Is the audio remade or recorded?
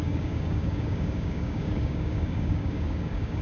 remade